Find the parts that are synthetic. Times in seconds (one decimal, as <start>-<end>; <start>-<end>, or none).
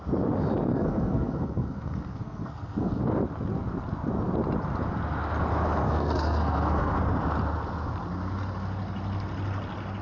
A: 0.7-3.0; 5.8-7.0